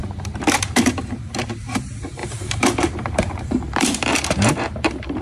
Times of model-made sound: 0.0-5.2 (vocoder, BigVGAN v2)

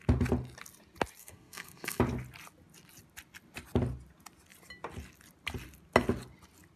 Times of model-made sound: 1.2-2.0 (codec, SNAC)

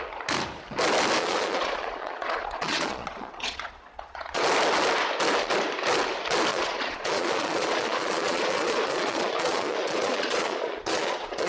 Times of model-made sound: 1.2-4.4 (vocoder, Vocos); 6.5-11.5

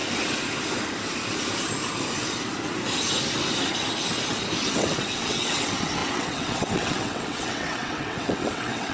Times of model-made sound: 4.7-8.9 (vocoder, WaveNeXt)